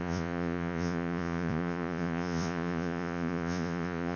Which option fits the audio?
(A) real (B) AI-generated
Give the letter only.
B